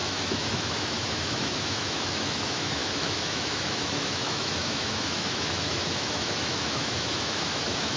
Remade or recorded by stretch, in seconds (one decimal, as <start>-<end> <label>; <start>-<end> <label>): 0.0-8.0 remade